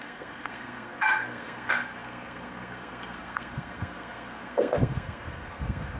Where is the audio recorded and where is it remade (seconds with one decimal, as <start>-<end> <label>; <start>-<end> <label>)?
0.0-6.0 remade